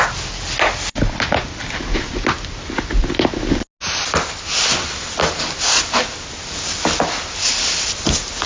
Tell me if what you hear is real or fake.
real